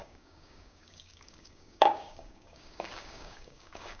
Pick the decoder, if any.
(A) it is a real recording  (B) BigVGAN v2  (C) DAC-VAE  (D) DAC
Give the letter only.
D